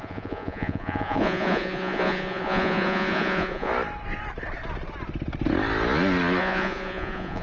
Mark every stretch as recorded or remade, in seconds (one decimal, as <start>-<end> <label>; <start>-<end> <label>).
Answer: 0.0-3.7 remade; 3.7-6.4 recorded; 6.4-7.4 remade